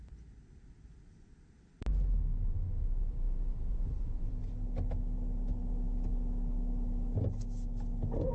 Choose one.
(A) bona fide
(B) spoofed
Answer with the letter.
A